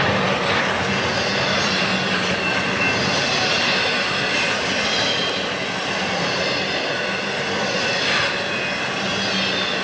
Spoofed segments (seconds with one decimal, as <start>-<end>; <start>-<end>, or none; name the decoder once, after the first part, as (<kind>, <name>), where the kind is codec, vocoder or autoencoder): 5.8-8.2 (vocoder, BigVGAN v2)